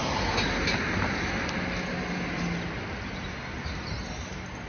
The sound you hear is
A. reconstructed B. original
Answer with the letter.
B